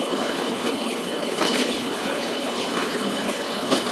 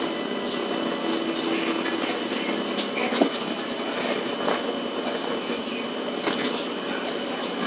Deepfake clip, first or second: first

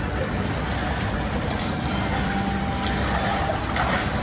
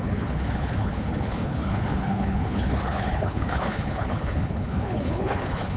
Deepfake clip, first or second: second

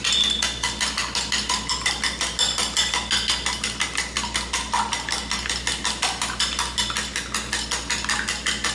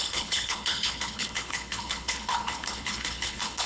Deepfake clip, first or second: second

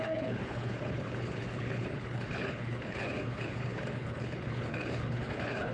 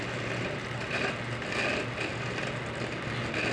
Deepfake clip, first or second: first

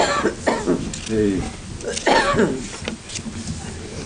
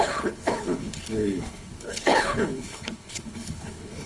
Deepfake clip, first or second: second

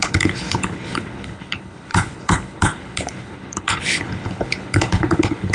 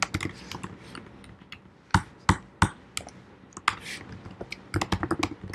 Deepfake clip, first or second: first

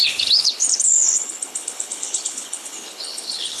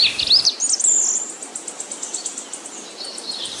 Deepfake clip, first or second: first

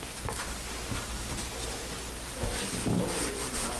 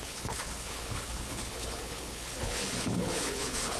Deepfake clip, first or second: second